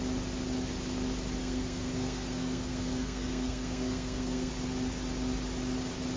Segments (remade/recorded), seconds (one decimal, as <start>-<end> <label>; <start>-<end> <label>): 0.0-1.4 recorded; 1.4-4.5 remade; 4.5-6.2 recorded